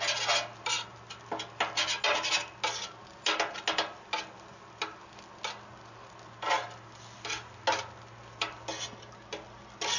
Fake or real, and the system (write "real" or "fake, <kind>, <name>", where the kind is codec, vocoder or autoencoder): real